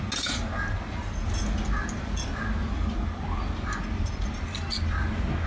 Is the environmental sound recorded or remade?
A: recorded